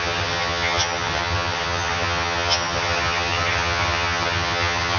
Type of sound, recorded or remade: remade